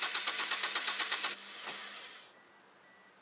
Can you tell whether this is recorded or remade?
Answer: recorded